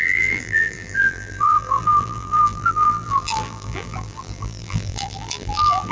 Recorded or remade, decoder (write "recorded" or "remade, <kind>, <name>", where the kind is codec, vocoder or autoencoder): remade, vocoder, BigVGAN v2